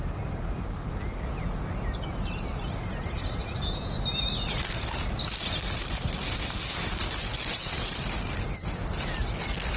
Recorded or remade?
recorded